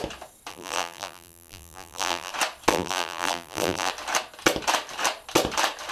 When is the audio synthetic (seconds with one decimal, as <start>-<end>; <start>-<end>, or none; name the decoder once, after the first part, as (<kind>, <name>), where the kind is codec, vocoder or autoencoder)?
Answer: 0.5-2.3 (vocoder, BigVGAN v2); 2.7-3.9